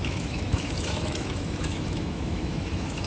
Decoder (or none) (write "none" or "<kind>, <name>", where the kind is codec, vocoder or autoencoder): autoencoder, DAC-VAE